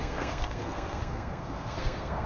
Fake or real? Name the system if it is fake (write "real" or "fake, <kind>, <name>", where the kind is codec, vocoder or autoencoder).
fake, codec, SNAC